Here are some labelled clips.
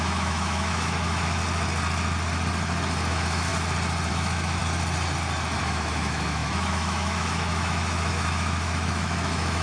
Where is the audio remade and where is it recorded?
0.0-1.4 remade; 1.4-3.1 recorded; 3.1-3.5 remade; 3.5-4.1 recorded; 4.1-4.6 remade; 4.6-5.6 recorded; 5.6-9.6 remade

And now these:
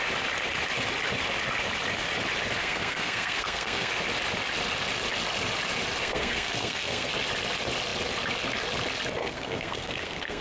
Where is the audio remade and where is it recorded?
0.0-2.6 recorded; 2.6-3.9 remade; 3.9-6.0 recorded; 6.0-7.1 remade; 7.1-9.2 recorded; 9.2-10.4 remade

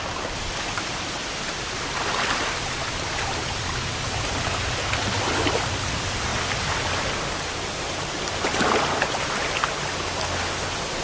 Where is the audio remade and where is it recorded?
0.0-11.0 recorded

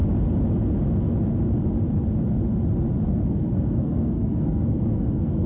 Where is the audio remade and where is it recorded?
0.0-3.1 recorded; 3.1-5.5 remade

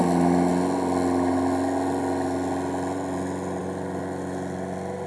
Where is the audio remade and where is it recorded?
0.0-5.1 recorded

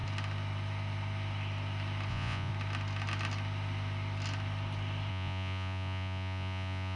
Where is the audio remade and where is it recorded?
0.0-2.1 recorded; 2.1-2.5 remade; 2.5-5.1 recorded; 5.1-7.0 remade